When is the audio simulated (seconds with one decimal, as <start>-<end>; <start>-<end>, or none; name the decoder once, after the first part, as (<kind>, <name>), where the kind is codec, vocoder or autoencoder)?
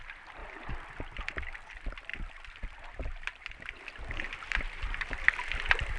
0.0-0.4 (vocoder, BigVGAN v2); 1.2-6.0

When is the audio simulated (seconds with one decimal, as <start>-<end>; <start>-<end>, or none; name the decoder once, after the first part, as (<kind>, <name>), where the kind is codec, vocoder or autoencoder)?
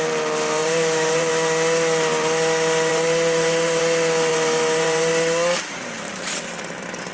0.6-1.3 (vocoder, BigVGAN v2); 2.9-3.8; 4.3-6.4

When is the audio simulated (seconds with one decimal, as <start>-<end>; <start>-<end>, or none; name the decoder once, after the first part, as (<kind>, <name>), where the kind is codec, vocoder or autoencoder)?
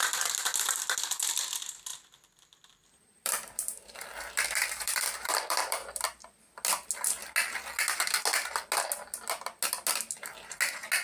1.9-5.9 (vocoder, BigVGAN v2)